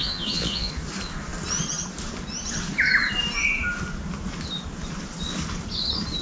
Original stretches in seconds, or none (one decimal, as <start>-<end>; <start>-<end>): 0.7-6.2